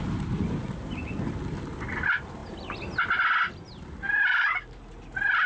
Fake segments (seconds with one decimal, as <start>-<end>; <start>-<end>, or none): none